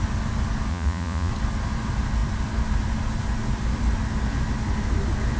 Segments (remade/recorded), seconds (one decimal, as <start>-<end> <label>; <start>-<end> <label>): 0.0-0.7 recorded; 0.7-1.3 remade; 1.3-5.4 recorded